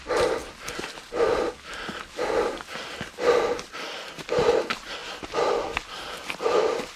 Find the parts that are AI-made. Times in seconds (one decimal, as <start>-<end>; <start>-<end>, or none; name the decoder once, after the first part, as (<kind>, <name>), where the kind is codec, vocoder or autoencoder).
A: none